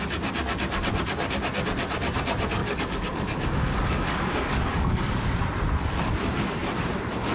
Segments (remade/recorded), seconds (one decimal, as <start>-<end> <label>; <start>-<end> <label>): 0.0-2.6 recorded; 2.6-5.1 remade; 5.1-7.3 recorded